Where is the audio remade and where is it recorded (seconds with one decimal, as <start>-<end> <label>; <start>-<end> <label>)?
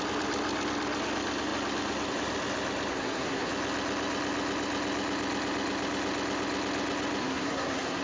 0.0-2.9 recorded; 2.9-3.5 remade; 3.5-7.2 recorded; 7.2-8.0 remade